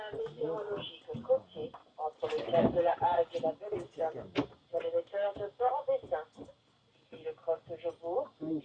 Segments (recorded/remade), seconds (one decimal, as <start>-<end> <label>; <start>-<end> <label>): 0.0-8.6 recorded